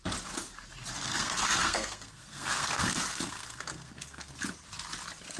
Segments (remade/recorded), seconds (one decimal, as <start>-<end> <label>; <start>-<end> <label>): 0.0-1.1 recorded; 1.1-4.3 remade; 4.3-5.4 recorded